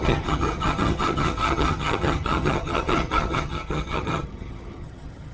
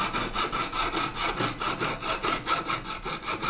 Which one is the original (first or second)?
second